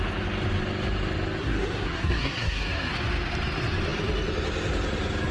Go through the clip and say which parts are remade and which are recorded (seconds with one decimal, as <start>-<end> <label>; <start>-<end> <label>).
0.0-1.4 recorded; 1.4-2.9 remade; 2.9-5.3 recorded

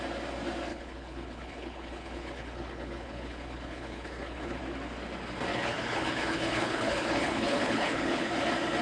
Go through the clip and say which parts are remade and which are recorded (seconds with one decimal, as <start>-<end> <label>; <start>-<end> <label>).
0.0-0.7 recorded; 0.7-4.6 remade; 4.6-5.5 recorded; 5.5-8.3 remade; 8.3-8.8 recorded

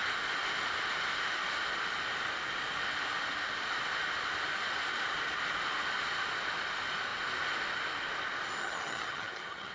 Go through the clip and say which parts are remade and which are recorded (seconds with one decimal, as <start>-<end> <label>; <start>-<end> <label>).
0.0-8.6 recorded; 8.6-9.7 remade

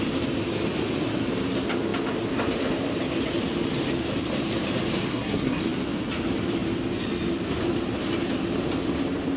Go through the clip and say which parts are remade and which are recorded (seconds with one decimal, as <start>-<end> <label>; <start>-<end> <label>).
0.0-5.1 recorded; 5.1-5.6 remade; 5.6-9.4 recorded

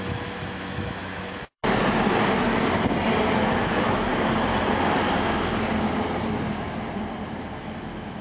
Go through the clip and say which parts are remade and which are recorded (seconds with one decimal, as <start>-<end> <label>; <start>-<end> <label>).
0.0-1.6 remade; 1.6-3.6 recorded; 3.6-4.1 remade; 4.1-7.4 recorded; 7.4-8.2 remade

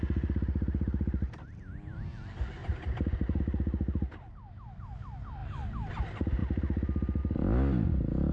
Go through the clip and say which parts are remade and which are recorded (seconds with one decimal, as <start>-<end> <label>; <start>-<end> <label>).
0.0-2.6 recorded; 2.6-3.4 remade; 3.4-8.3 recorded

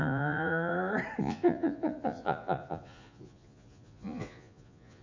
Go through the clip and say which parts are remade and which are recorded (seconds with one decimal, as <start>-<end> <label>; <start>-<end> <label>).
0.0-0.7 remade; 0.7-1.2 recorded; 1.2-5.0 remade

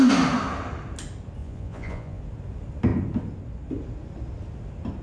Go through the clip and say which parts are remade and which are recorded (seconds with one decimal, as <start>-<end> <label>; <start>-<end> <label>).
0.0-1.4 recorded; 1.4-2.2 remade; 2.2-5.0 recorded